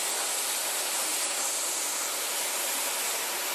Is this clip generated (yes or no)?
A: no